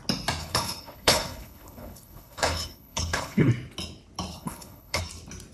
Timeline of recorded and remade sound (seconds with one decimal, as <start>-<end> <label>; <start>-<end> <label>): 0.0-0.4 recorded; 0.4-3.5 remade; 3.5-4.3 recorded; 4.3-5.0 remade; 5.0-5.5 recorded